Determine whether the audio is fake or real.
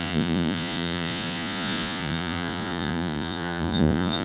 fake